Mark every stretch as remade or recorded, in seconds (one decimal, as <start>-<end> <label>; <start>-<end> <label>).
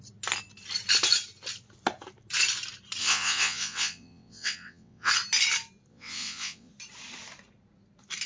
0.0-3.0 recorded; 3.0-5.1 remade; 5.1-5.9 recorded; 5.9-6.7 remade; 6.7-8.3 recorded